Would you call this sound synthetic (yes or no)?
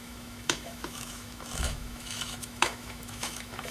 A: yes